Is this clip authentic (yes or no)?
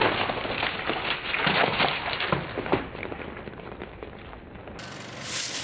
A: yes